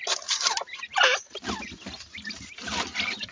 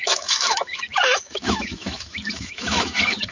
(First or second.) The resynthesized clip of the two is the second